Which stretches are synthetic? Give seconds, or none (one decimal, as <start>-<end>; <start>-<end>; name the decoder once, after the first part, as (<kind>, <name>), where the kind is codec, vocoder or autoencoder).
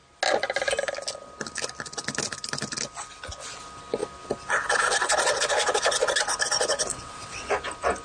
6.9-7.5 (vocoder, WaveNeXt)